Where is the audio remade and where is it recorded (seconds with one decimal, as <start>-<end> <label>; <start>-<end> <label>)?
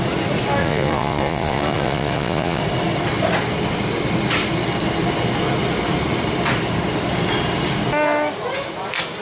0.0-0.6 recorded; 0.6-2.6 remade; 2.6-9.2 recorded